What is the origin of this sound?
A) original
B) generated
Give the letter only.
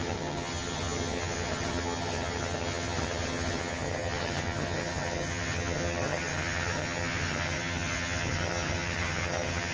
B